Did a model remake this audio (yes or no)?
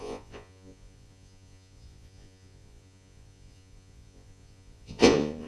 yes